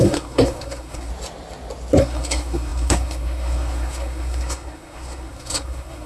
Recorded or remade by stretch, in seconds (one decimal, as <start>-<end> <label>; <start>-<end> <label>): 0.0-1.1 remade; 1.1-2.0 recorded; 2.0-6.1 remade